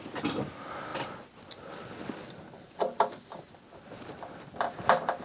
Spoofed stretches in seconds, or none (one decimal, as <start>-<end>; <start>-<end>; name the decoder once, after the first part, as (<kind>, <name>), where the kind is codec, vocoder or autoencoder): none

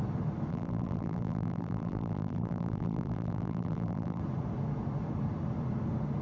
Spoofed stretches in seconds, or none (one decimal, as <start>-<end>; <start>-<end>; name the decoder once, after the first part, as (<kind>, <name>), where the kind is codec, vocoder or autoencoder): 0.5-4.2 (vocoder, BigVGAN v2)

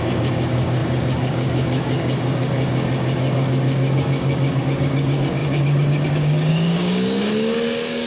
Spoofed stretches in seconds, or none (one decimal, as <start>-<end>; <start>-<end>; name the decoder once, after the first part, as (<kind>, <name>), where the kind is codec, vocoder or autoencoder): 0.0-8.1 (codec, DAC)

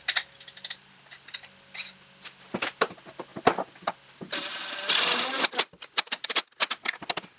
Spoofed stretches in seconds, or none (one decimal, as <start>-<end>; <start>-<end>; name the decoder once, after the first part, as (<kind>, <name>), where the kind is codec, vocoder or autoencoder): none

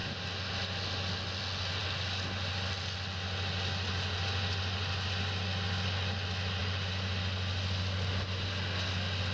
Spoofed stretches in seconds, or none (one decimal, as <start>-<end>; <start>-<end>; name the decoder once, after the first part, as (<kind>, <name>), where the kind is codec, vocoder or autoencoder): none